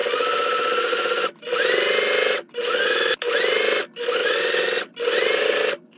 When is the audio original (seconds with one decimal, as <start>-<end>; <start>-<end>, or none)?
0.0-6.0